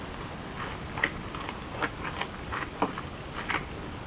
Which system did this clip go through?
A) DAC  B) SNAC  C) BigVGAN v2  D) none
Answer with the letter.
D